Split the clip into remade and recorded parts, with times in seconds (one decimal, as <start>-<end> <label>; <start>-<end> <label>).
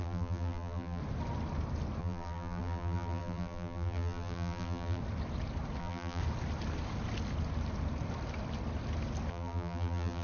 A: 0.0-1.0 remade; 1.0-2.0 recorded; 2.0-5.0 remade; 5.0-5.8 recorded; 5.8-6.2 remade; 6.2-9.3 recorded; 9.3-10.2 remade